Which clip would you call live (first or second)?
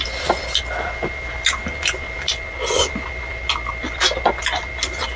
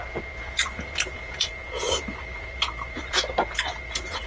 first